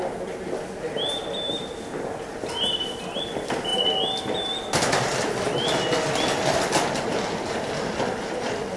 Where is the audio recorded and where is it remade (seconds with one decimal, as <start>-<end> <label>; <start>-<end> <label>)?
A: 0.0-1.2 recorded; 1.2-2.0 remade; 2.0-8.8 recorded